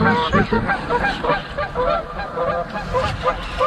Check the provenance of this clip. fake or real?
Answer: real